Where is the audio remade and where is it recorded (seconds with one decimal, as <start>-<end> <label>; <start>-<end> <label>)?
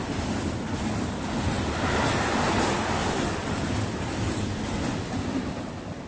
0.0-3.0 recorded; 3.0-6.1 remade